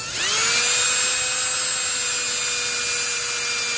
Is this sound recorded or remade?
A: recorded